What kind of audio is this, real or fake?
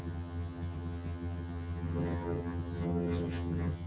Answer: fake